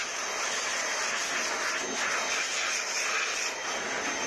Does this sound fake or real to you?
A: real